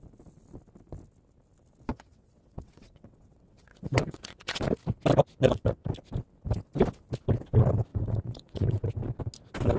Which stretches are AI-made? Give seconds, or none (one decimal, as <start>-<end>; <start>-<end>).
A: 1.9-4.6; 5.4-5.9; 7.9-8.9